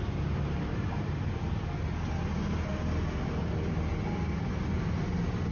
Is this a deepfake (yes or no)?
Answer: no